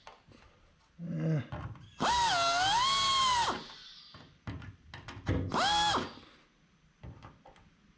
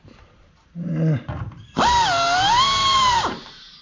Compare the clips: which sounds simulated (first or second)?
second